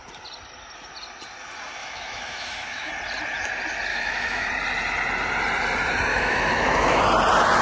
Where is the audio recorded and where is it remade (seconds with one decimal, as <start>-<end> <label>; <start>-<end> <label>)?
0.0-1.8 recorded; 1.8-2.9 remade; 2.9-3.9 recorded; 3.9-4.5 remade; 4.5-6.1 recorded; 6.1-7.0 remade; 7.0-7.6 recorded